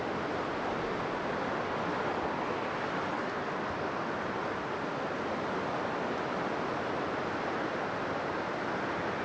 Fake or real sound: real